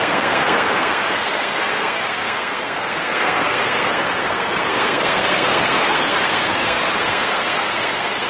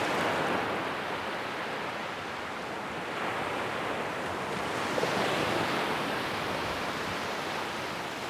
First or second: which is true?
second